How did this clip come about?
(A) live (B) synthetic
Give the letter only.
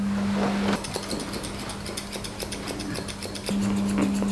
A